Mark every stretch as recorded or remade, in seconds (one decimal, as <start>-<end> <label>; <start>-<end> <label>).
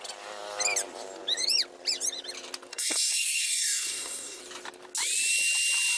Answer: 0.0-2.7 recorded; 2.7-4.4 remade; 4.4-6.0 recorded